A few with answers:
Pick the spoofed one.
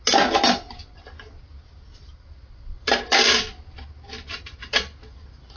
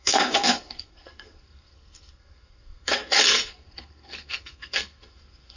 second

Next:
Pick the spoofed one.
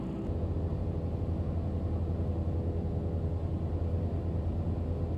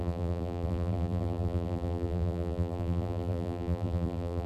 second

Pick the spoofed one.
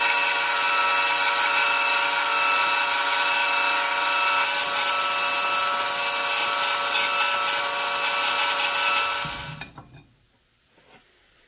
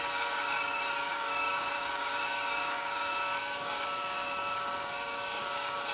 second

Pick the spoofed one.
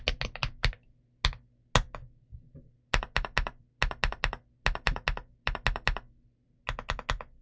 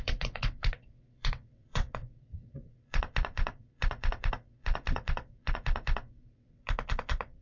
second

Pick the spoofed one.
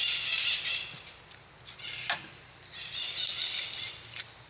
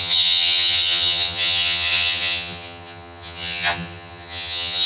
second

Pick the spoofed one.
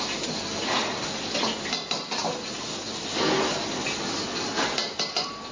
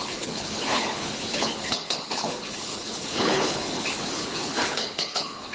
second